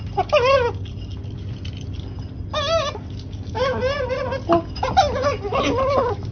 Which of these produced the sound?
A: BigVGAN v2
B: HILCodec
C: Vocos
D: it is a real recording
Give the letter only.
D